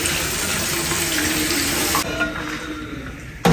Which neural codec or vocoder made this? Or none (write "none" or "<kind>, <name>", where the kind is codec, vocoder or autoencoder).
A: none